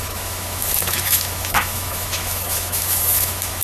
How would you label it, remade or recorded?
remade